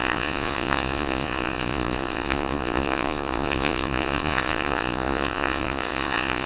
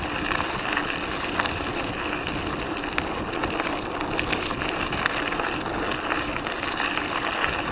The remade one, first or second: first